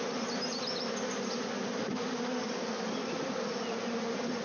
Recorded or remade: recorded